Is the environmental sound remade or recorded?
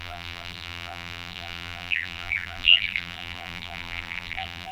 remade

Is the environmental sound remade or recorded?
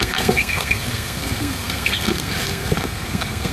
remade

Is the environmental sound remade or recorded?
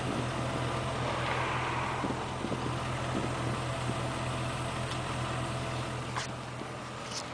recorded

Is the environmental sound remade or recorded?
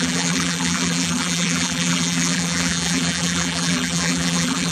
remade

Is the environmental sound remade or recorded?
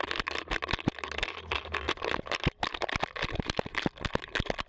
recorded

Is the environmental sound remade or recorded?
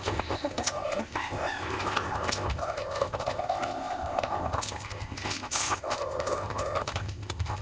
remade